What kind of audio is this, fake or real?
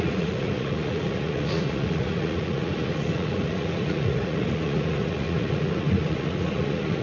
fake